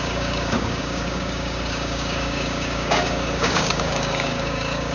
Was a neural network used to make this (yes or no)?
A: yes